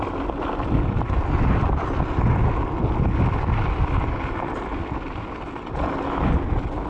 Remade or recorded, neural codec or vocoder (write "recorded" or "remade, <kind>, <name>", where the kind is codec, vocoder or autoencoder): recorded